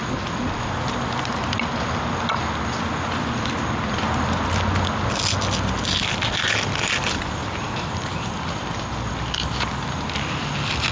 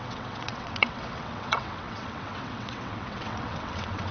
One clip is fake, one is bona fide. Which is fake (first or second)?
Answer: second